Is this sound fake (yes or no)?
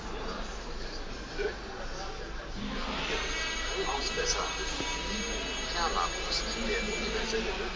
no